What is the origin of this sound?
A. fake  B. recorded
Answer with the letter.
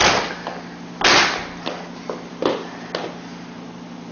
B